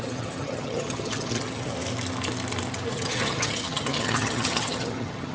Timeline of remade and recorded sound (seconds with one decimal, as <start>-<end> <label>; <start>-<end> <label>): 0.0-1.7 remade; 1.7-2.9 recorded; 2.9-5.3 remade